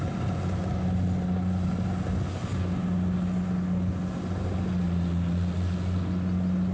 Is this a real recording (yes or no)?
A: yes